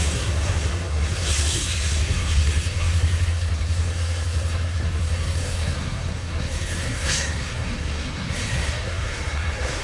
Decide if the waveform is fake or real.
fake